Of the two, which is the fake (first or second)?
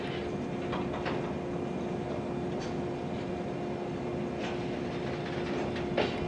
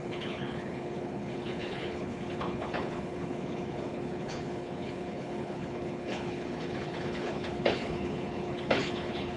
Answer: second